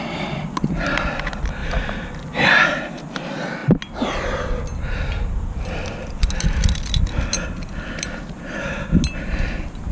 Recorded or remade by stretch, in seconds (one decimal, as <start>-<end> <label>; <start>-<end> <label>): 0.0-9.9 recorded